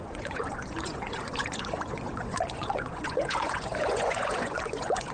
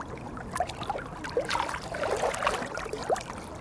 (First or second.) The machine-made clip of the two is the first